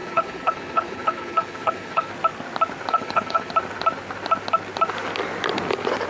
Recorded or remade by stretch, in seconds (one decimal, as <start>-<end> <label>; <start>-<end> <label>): 0.0-2.1 remade; 2.1-2.9 recorded; 2.9-3.5 remade; 3.5-6.1 recorded